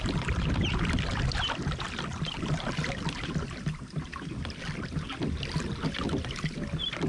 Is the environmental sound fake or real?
real